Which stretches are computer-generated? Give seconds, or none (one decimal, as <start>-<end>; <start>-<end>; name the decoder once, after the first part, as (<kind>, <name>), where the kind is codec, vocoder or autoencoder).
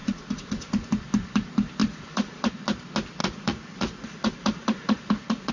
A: 0.0-0.9 (vocoder, Vocos); 1.8-2.5; 3.2-5.5